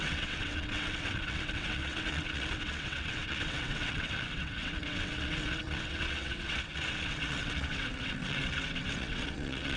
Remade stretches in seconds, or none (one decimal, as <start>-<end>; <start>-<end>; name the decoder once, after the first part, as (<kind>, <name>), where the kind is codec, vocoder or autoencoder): 0.0-9.8 (vocoder, WaveNeXt)